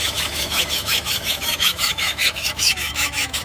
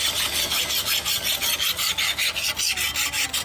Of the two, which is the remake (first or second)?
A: first